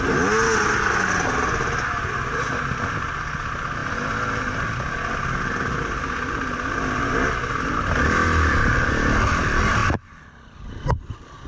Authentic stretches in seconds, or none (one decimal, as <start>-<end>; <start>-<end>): 0.0-11.5